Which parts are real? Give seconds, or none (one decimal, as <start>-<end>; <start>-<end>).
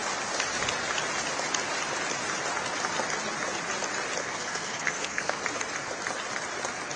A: 0.0-4.2; 5.4-7.0